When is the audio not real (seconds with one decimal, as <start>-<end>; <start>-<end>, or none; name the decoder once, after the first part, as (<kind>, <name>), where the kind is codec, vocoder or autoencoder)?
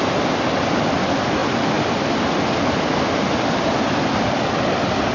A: none